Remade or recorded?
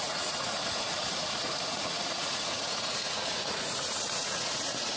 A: remade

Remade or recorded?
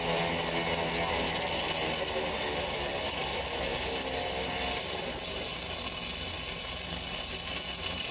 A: recorded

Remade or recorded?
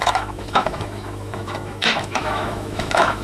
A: remade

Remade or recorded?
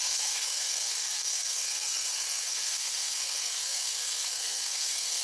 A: remade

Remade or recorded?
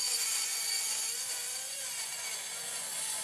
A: remade